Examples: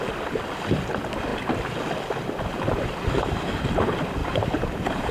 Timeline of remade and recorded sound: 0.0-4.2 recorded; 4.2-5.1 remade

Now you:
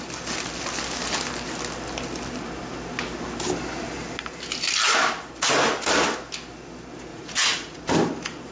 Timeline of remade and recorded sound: 0.0-7.1 recorded; 7.1-7.8 remade; 7.8-8.5 recorded

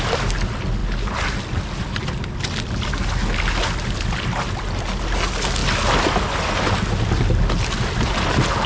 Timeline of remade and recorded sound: 0.0-8.7 recorded

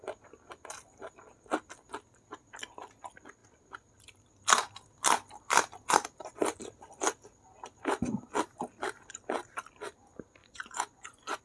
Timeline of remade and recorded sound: 0.0-10.4 recorded; 10.4-11.4 remade

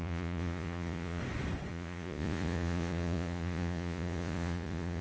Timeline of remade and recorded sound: 0.0-1.2 remade; 1.2-1.7 recorded; 1.7-5.0 remade